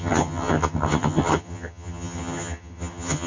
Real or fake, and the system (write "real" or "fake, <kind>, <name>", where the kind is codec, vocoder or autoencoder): fake, vocoder, HiFi-GAN